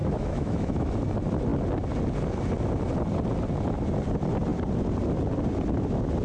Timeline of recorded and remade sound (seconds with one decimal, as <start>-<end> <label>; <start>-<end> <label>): 0.0-0.9 remade; 0.9-6.2 recorded